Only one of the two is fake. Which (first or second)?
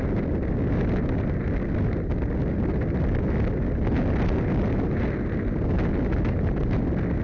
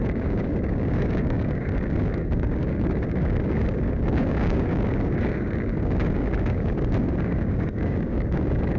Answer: second